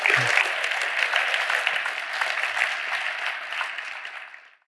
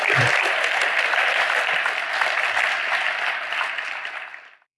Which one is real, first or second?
first